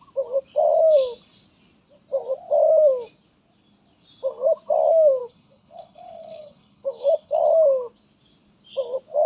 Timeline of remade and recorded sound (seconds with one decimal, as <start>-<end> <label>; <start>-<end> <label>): 0.0-5.2 recorded; 5.2-7.4 remade; 7.4-9.3 recorded